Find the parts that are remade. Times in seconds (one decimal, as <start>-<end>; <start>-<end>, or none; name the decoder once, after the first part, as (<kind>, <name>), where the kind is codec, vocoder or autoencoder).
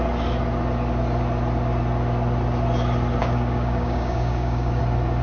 3.2-4.8 (codec, DAC)